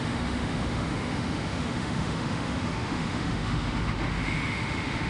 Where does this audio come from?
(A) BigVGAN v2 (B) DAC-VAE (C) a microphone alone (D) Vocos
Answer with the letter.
B